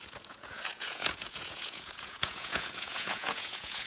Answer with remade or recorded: remade